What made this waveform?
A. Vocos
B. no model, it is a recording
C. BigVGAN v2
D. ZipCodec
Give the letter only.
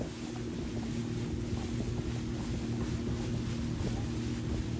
B